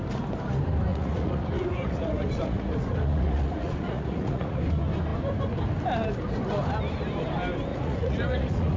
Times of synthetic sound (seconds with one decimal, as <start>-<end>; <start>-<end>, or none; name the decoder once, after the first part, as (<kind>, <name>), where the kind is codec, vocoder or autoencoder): 0.9-4.6 (vocoder, Vocos); 7.7-8.8